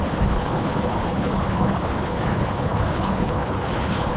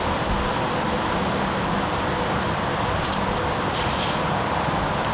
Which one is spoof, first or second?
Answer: first